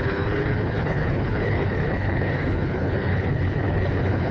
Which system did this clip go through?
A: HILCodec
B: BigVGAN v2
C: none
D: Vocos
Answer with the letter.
A